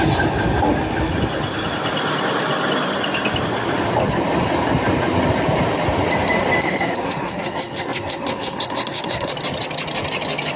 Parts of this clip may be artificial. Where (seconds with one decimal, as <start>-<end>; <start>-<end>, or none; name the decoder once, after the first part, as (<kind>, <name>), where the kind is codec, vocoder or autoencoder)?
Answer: 6.6-9.3 (codec, SNAC)